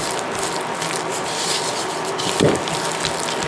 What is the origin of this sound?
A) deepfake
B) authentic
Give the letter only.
B